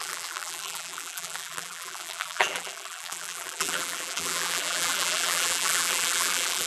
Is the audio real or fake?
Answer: fake